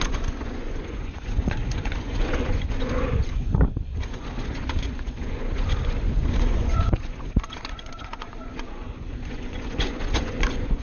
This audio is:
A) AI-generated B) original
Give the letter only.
A